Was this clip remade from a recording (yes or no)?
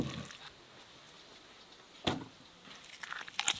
no